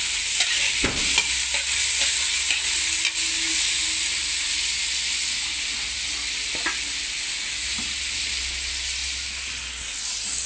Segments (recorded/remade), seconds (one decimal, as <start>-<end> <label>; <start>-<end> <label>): 0.0-10.5 recorded